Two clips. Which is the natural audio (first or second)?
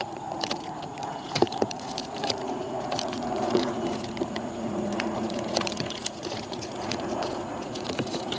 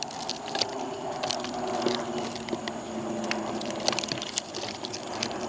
second